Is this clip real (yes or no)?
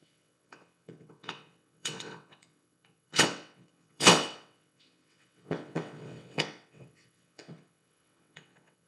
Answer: no